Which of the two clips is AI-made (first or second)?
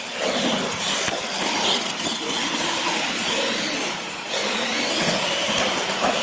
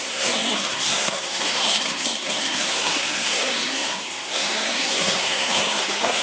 second